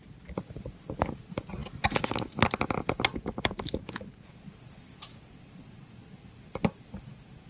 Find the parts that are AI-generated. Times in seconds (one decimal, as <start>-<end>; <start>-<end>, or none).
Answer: none